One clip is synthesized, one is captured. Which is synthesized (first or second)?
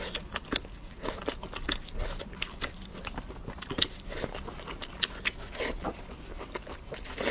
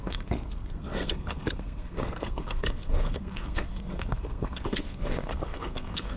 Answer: second